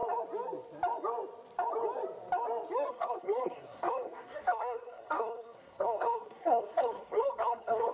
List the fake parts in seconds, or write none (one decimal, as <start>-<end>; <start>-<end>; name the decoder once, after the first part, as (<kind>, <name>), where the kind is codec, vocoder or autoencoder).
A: 2.9-7.9 (codec, SNAC)